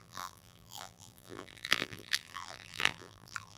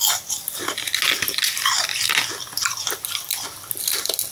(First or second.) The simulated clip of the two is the first